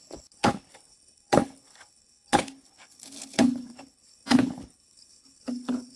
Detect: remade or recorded remade